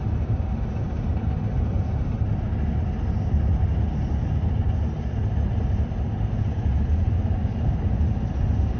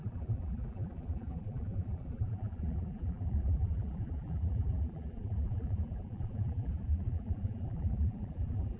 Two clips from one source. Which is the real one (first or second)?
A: first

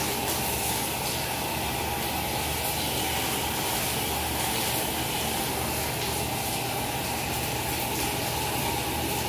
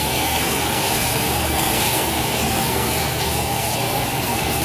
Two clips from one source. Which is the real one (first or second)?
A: first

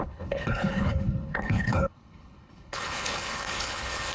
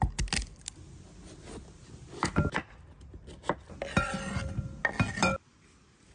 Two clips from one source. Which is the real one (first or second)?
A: second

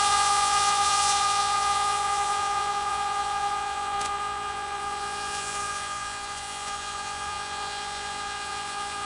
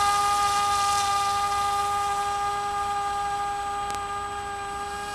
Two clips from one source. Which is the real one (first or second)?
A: second